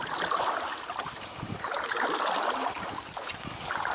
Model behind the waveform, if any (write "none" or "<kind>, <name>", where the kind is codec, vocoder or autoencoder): none